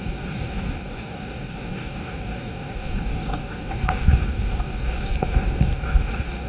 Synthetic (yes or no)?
yes